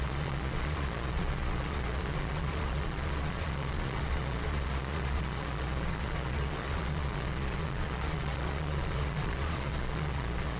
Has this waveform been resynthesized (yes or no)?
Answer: yes